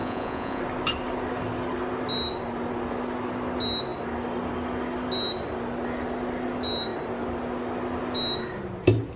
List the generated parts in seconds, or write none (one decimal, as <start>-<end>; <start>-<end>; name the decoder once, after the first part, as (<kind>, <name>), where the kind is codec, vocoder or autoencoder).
0.0-0.6 (vocoder, Vocos)